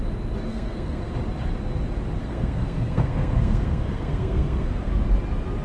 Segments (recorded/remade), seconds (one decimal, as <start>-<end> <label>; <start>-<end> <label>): 0.0-0.5 recorded; 0.5-1.1 remade; 1.1-2.2 recorded; 2.2-4.9 remade; 4.9-5.6 recorded